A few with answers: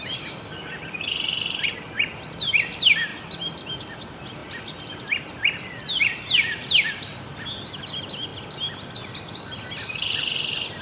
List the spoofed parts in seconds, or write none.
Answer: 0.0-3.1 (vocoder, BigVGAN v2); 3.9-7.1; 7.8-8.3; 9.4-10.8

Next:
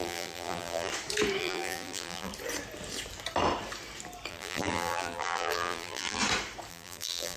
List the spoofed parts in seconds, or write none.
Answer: 0.0-0.9 (vocoder, BigVGAN v2); 1.4-2.3; 4.3-6.2; 6.7-7.4

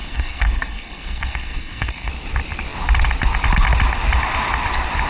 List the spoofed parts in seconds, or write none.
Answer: 0.0-2.1 (codec, SNAC)

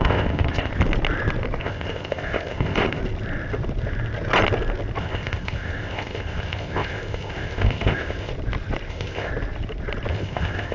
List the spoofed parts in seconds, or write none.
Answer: 0.0-0.7 (codec, ZipCodec); 1.6-3.0; 5.0-8.3; 8.9-9.3; 10.1-10.7

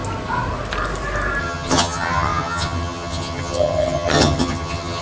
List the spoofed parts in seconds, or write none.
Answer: 1.4-5.0 (vocoder, HiFi-GAN)

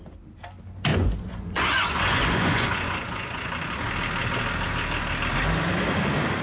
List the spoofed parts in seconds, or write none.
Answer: 0.9-3.5 (vocoder, Vocos)

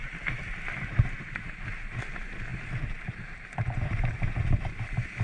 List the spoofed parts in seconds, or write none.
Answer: none

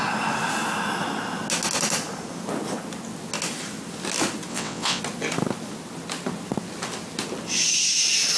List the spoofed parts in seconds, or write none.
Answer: 4.5-5.0 (vocoder, WaveNeXt)